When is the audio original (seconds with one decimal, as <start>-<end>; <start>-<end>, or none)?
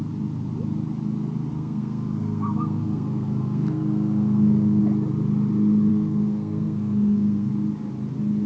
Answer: 0.0-1.5; 4.8-5.9; 7.5-8.5